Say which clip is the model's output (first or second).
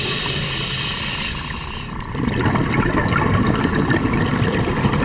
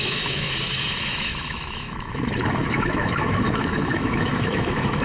second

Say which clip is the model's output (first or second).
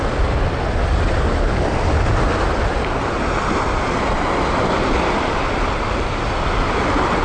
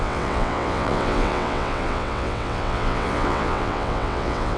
second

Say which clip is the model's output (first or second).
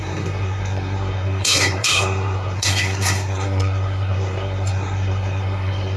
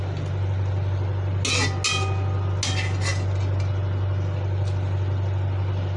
first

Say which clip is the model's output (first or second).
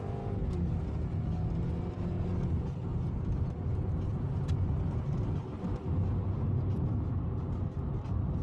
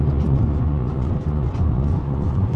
second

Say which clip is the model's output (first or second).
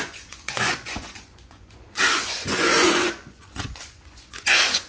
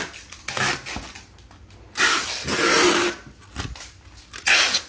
first